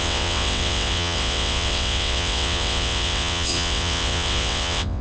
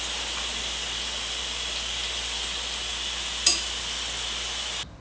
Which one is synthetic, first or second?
first